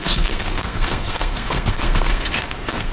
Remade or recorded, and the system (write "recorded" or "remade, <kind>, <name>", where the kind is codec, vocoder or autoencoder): remade, codec, SNAC